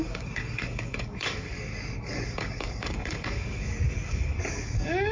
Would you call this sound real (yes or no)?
no